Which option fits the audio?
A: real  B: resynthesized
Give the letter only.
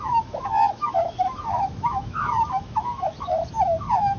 B